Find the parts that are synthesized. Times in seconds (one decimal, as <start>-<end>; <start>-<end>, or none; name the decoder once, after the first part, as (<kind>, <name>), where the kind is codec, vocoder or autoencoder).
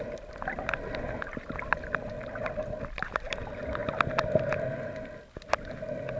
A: none